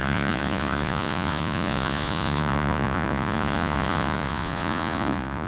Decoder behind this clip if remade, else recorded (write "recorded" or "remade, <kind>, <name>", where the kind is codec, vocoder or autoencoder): remade, vocoder, Vocos